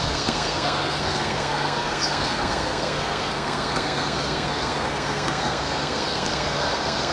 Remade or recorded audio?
remade